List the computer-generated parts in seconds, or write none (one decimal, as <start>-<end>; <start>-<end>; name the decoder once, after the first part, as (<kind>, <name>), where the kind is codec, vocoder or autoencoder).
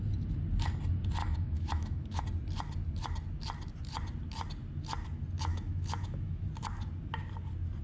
1.2-2.2 (autoencoder, DAC-VAE); 5.5-6.5